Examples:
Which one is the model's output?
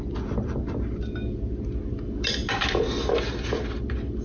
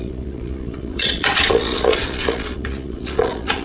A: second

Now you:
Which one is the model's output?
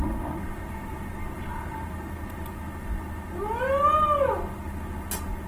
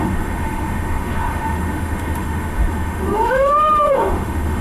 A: second